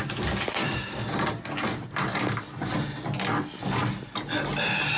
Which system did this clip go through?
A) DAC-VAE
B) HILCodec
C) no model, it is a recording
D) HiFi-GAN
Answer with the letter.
C